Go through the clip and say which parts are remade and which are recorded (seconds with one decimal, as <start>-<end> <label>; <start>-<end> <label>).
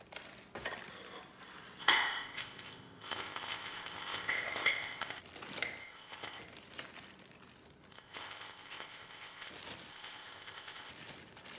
0.0-1.8 recorded; 1.8-5.2 remade; 5.2-5.8 recorded; 5.8-6.4 remade; 6.4-7.9 recorded; 7.9-9.5 remade; 9.5-9.9 recorded; 9.9-10.9 remade; 10.9-11.6 recorded